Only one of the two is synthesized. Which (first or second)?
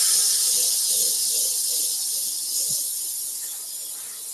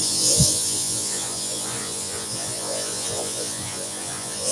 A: second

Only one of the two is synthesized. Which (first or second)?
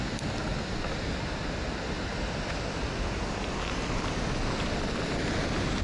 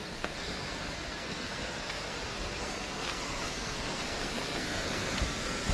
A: second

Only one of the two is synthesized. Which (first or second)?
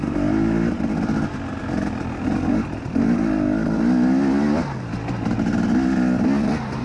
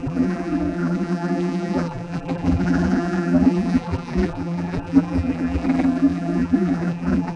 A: second